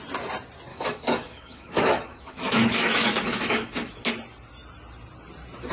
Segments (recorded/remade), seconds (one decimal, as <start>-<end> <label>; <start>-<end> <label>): 0.0-0.7 recorded; 0.7-4.1 remade; 4.1-5.7 recorded